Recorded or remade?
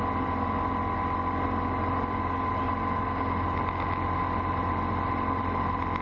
recorded